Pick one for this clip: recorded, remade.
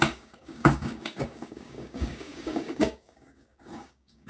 remade